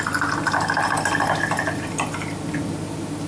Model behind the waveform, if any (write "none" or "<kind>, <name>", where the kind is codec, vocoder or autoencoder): none